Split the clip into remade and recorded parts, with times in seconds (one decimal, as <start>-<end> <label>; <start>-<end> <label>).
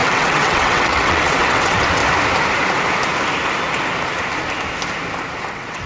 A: 0.0-2.0 remade; 2.0-5.5 recorded; 5.5-5.9 remade